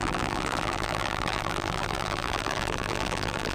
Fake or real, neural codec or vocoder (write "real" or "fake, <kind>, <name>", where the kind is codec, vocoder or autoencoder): fake, vocoder, BigVGAN v2